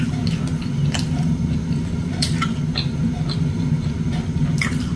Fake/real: real